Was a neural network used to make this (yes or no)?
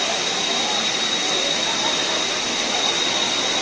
no